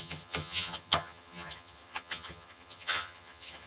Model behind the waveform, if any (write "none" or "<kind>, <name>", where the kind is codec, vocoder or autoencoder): vocoder, HiFi-GAN